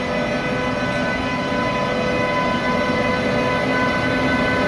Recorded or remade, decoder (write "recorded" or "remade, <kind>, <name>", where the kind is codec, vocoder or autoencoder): recorded